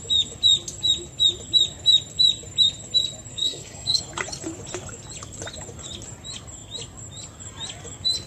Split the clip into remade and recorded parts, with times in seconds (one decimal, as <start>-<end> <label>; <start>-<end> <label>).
0.0-3.3 recorded; 3.3-4.0 remade; 4.0-8.3 recorded